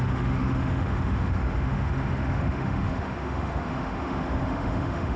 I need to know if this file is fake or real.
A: fake